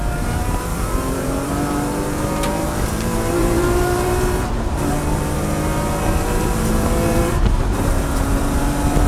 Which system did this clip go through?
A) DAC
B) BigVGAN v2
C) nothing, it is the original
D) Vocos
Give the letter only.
B